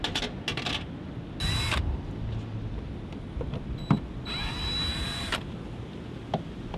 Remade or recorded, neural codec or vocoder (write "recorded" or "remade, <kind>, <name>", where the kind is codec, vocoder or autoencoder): recorded